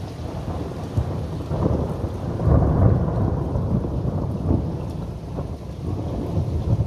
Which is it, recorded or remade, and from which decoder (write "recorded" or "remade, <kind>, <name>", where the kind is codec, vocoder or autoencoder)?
recorded